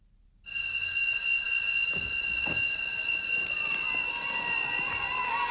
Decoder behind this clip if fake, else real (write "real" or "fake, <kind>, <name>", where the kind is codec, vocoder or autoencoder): real